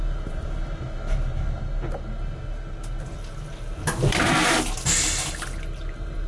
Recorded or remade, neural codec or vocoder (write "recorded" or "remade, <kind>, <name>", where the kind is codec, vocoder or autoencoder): recorded